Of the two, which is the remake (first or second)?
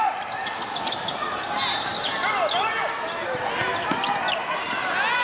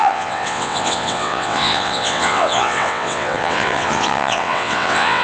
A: second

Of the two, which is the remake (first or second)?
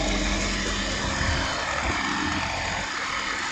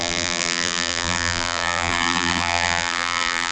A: second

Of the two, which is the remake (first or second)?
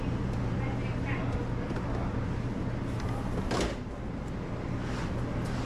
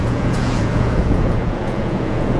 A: second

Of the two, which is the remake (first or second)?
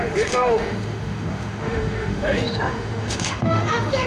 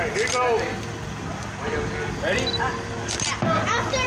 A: first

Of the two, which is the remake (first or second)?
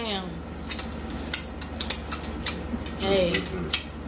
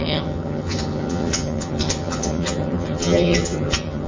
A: second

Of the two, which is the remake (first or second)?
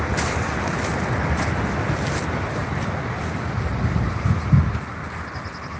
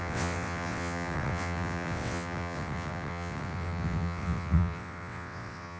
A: second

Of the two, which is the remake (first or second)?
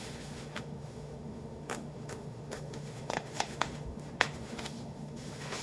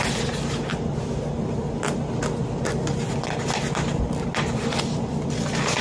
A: first